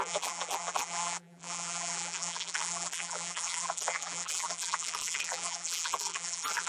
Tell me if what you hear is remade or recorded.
remade